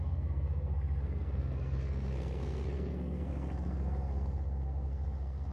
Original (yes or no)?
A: no